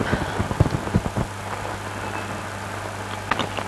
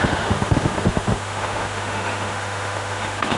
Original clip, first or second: first